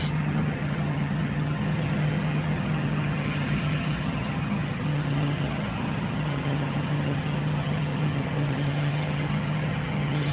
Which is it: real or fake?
fake